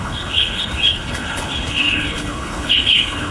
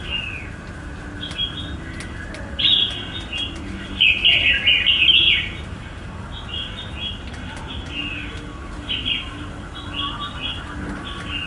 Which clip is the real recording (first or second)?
second